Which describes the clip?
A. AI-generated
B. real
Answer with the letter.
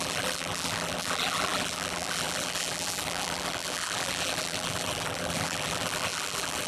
A